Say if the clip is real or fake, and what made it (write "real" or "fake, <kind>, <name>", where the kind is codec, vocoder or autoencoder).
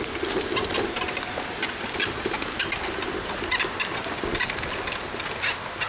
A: real